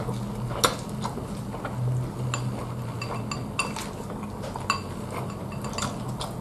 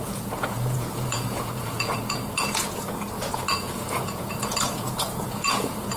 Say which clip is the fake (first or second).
second